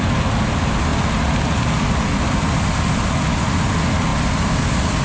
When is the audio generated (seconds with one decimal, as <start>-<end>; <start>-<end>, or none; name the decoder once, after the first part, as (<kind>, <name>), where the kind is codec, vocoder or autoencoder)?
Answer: none